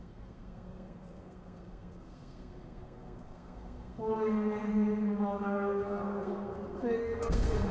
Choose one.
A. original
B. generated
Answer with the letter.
B